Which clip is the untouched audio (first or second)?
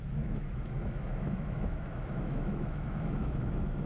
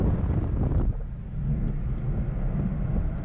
second